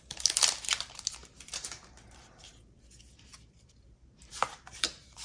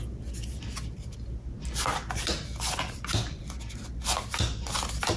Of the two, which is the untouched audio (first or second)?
second